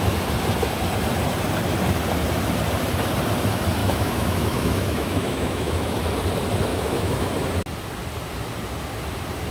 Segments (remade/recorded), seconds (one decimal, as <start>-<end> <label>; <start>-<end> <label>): 0.0-3.8 recorded; 3.8-6.0 remade; 6.0-6.7 recorded; 6.7-7.3 remade; 7.3-9.5 recorded